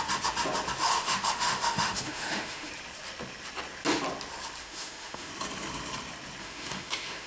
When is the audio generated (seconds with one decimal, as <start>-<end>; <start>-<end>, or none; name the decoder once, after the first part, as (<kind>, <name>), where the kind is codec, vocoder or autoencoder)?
1.0-2.7 (autoencoder, DAC-VAE); 4.6-5.3; 6.4-7.3